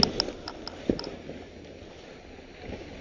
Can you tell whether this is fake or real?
real